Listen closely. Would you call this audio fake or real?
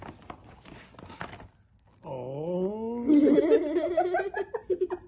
real